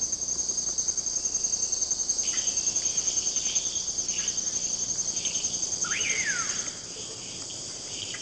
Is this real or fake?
real